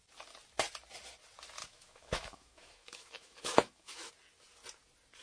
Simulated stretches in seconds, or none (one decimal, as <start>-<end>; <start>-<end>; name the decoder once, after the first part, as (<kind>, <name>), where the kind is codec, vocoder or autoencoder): 1.6-4.1 (autoencoder, DAC-VAE)